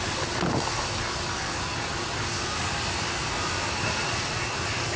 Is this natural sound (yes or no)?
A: yes